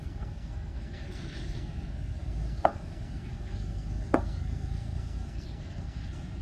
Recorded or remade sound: remade